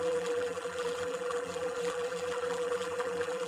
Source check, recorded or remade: remade